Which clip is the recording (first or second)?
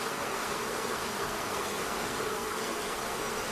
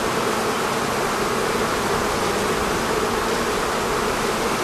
second